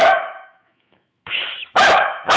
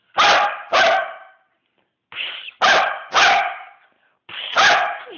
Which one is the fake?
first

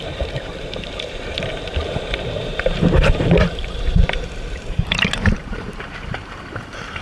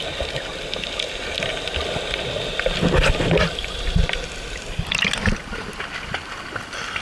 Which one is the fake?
first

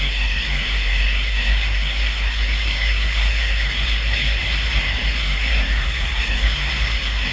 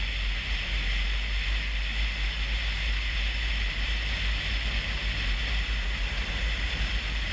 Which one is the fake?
first